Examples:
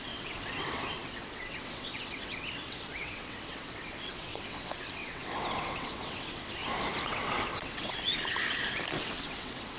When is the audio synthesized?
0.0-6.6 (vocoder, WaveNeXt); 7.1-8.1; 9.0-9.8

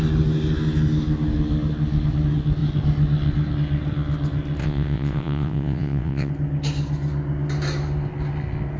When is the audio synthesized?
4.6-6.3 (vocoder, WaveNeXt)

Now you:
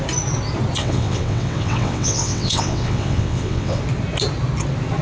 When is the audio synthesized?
0.8-3.8 (vocoder, WaveNeXt)

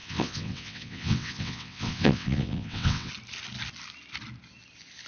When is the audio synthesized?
0.0-3.1 (vocoder, WaveNeXt)

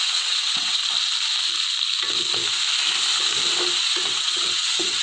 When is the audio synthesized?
0.0-0.8 (vocoder, WaveNeXt); 3.8-5.0

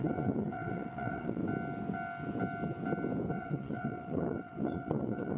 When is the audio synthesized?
0.0-1.4 (vocoder, WaveNeXt); 3.3-5.4

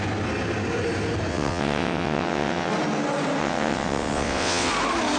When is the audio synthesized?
1.3-2.7 (vocoder, WaveNeXt); 3.4-4.7

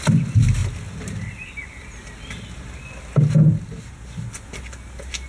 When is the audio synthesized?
none